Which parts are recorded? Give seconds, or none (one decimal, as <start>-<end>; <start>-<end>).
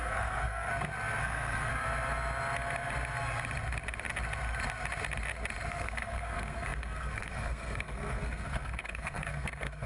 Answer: 0.7-1.2; 1.7-5.7